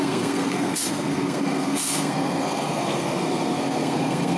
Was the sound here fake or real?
fake